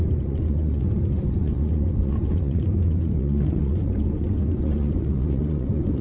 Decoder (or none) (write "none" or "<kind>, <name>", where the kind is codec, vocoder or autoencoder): vocoder, Vocos